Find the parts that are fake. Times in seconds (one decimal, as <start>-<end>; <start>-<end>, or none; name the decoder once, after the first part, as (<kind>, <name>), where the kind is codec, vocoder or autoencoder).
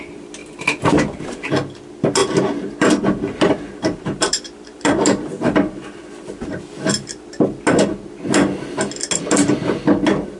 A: 0.4-1.5 (vocoder, BigVGAN v2); 2.2-7.3